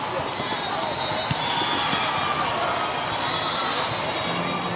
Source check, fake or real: real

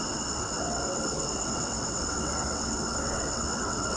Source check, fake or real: fake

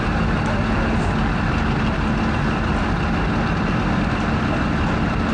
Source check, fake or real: real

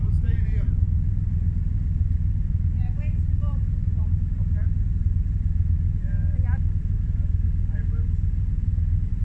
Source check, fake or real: real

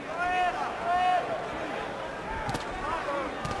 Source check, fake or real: real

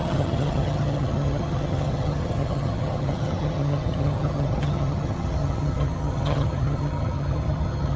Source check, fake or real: fake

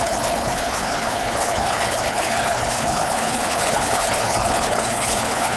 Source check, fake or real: fake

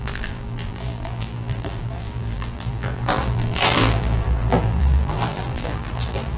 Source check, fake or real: fake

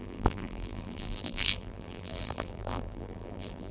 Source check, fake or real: fake